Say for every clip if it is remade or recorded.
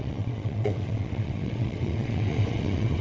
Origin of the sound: remade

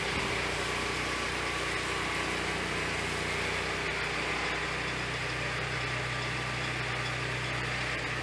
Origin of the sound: recorded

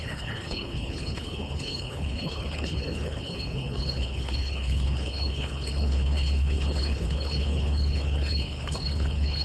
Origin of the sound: remade